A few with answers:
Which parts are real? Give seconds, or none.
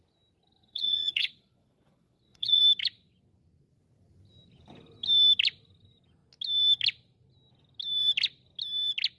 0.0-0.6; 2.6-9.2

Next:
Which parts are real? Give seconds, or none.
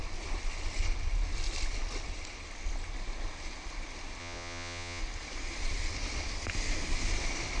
0.0-4.2; 5.0-7.6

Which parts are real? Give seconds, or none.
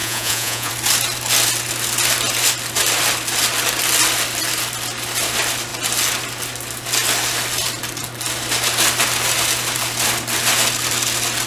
0.7-11.5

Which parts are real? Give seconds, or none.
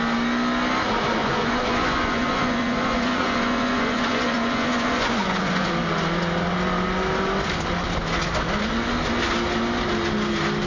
0.0-1.2; 5.7-10.7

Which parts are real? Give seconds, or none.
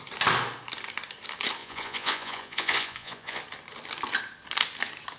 0.0-1.6; 3.4-5.2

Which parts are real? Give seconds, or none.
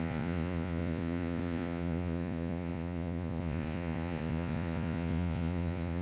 none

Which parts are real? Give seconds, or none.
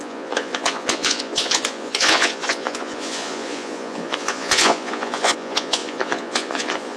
none